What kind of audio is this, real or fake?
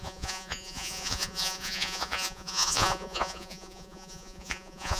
fake